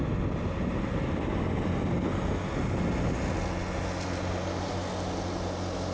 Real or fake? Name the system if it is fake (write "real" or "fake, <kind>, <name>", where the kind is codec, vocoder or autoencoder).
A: real